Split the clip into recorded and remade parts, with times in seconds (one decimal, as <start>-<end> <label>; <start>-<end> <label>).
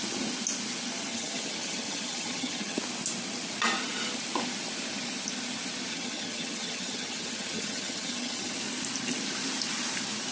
0.0-1.1 recorded; 1.1-2.8 remade; 2.8-5.9 recorded; 5.9-8.5 remade; 8.5-10.3 recorded